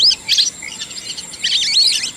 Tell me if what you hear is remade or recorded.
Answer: recorded